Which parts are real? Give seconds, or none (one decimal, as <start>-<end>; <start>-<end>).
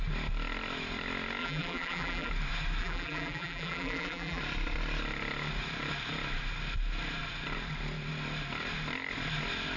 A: 0.0-1.4; 2.3-2.8; 4.4-9.8